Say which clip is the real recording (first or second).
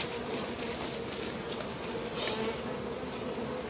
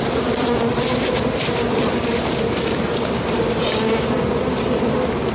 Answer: first